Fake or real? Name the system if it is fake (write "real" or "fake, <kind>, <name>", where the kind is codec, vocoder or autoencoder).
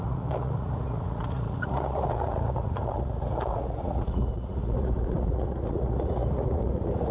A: fake, vocoder, Vocos